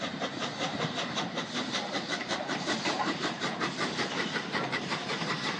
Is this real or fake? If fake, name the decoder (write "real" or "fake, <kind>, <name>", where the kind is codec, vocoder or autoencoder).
fake, vocoder, BigVGAN v2